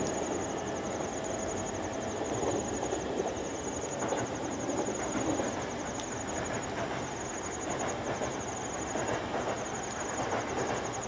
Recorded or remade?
recorded